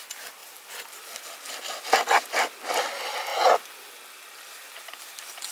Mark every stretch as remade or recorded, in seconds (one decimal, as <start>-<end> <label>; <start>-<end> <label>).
0.0-5.5 recorded